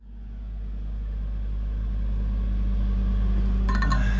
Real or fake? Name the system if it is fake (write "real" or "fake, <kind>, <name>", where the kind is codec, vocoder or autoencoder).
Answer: real